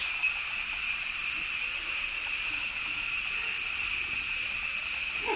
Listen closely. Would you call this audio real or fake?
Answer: real